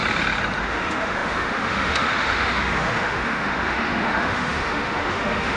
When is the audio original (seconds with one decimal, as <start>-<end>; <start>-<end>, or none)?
0.0-0.6